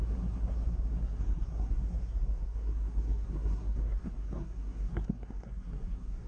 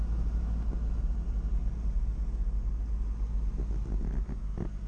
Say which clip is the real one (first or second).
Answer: second